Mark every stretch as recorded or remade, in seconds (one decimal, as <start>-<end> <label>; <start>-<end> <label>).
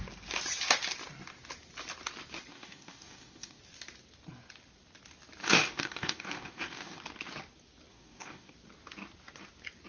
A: 0.0-2.5 recorded; 2.5-3.6 remade; 3.6-5.4 recorded; 5.4-7.0 remade; 7.0-7.9 recorded; 7.9-8.5 remade; 8.5-9.9 recorded